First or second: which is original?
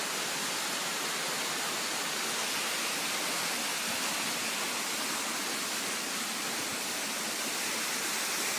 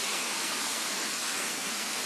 first